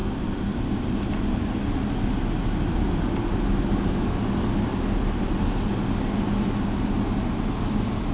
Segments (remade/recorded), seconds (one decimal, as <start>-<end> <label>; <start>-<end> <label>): 0.0-8.1 recorded